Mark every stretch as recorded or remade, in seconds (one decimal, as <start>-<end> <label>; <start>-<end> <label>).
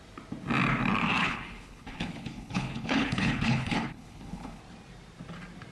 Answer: 0.0-1.2 recorded; 1.2-4.6 remade; 4.6-5.7 recorded